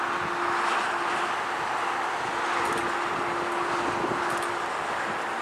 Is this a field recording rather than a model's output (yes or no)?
yes